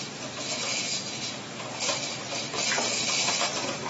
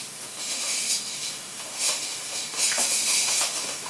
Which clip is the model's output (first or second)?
second